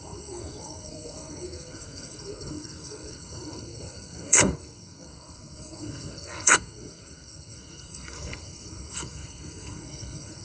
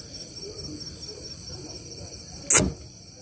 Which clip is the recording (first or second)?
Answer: second